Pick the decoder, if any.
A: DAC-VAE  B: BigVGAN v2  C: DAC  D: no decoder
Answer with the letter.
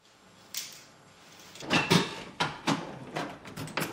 D